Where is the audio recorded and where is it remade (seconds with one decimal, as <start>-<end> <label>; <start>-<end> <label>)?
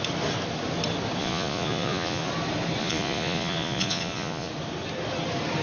0.0-1.2 recorded; 1.2-2.3 remade; 2.3-2.8 recorded; 2.8-4.5 remade; 4.5-5.6 recorded